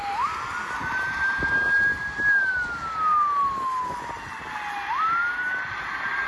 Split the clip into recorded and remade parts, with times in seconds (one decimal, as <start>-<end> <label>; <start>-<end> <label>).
0.0-6.3 recorded